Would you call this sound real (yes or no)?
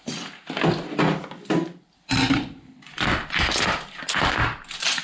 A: yes